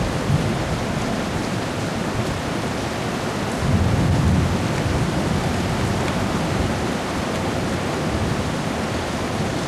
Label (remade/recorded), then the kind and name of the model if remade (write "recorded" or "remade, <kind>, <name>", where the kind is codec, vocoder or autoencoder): recorded